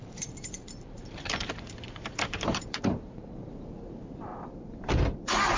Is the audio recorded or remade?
remade